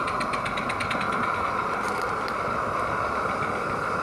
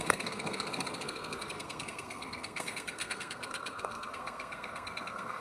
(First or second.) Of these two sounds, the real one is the first